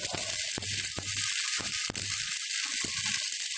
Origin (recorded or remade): recorded